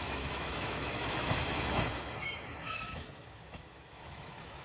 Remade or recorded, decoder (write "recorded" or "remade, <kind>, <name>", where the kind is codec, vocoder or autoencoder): remade, autoencoder, DAC-VAE